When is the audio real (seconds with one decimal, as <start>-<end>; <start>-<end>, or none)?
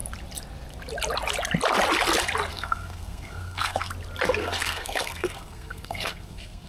0.0-2.5; 3.9-4.4